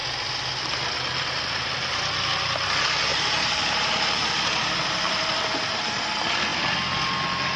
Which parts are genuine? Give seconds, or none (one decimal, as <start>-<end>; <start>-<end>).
0.0-3.1; 5.8-7.6